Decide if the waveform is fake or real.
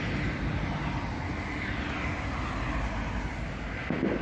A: real